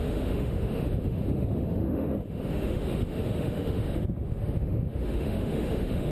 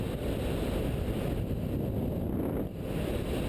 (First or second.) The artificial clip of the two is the first